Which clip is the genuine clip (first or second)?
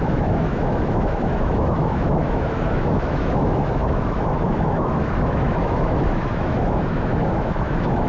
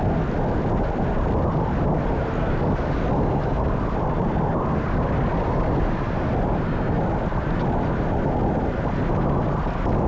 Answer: second